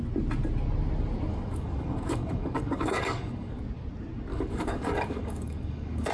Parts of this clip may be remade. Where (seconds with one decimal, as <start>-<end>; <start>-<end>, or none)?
1.3-3.6; 4.3-6.1